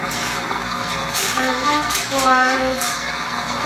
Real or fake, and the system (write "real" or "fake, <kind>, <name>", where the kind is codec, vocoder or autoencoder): fake, codec, SNAC